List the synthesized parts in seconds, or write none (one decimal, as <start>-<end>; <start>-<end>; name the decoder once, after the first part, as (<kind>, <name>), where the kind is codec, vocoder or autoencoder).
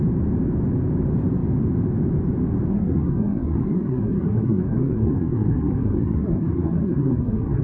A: 2.7-7.6 (codec, SNAC)